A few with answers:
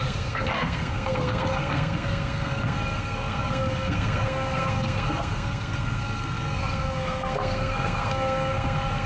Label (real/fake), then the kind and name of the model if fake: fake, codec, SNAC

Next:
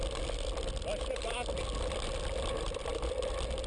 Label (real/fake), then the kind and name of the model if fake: real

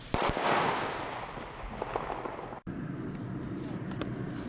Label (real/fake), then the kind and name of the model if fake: real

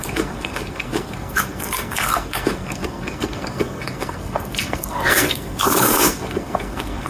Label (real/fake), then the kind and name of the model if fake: fake, codec, SNAC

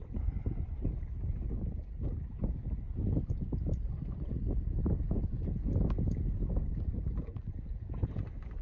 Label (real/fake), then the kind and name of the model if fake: real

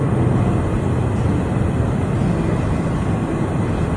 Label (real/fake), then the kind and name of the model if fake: real